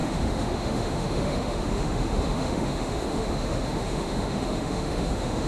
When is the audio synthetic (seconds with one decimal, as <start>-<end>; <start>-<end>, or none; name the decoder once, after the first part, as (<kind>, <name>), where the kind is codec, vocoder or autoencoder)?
0.0-5.5 (autoencoder, DAC-VAE)